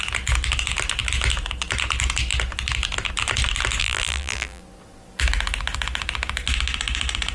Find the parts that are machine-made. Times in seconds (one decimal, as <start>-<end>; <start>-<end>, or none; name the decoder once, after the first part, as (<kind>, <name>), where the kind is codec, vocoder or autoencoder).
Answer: 3.8-4.6 (vocoder, BigVGAN v2)